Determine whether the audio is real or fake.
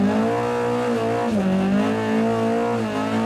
real